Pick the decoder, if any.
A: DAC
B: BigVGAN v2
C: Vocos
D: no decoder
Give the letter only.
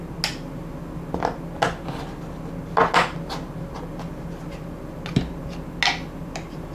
D